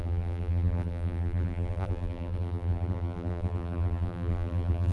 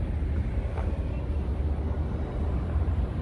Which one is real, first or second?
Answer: second